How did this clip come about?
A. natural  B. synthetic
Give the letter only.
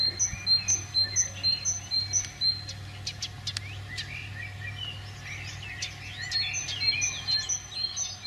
A